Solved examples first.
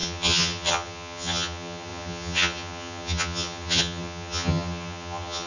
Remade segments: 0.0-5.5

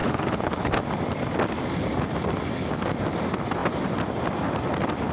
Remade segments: 0.0-0.7

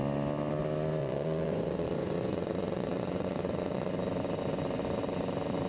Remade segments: 1.0-3.9

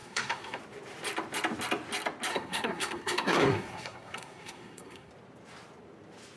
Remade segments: 0.0-0.6; 2.3-5.1

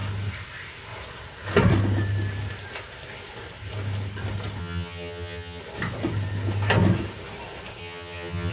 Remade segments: 4.6-5.6; 7.8-8.5

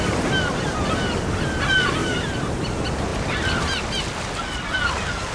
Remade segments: 2.0-2.5

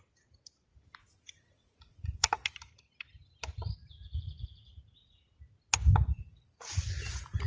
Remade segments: 0.7-2.3

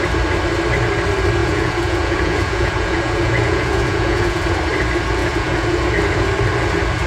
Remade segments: 1.4-4.6; 5.2-5.9